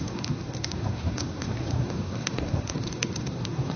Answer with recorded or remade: remade